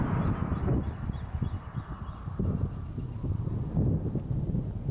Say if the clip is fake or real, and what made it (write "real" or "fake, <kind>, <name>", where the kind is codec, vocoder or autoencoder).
real